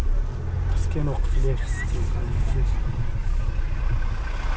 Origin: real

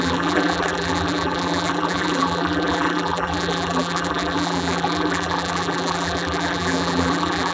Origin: fake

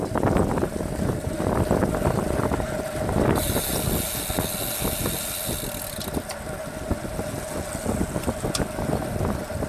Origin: real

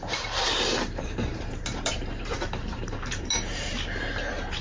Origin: fake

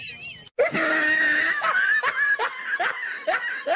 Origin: real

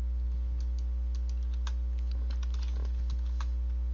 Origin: real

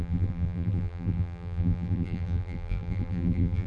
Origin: fake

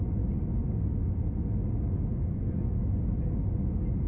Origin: real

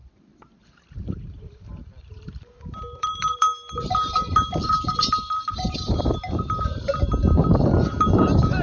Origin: fake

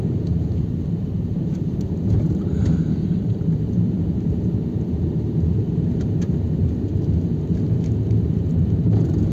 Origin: fake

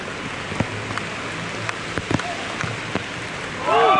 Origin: real